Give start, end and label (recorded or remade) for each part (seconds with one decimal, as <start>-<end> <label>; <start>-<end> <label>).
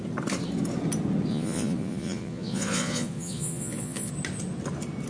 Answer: 0.0-1.3 recorded; 1.3-4.1 remade; 4.1-5.1 recorded